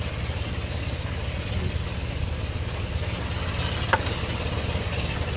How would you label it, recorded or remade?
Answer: recorded